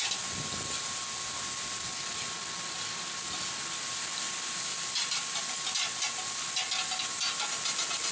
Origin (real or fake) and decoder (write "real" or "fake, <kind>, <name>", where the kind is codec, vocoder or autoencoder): real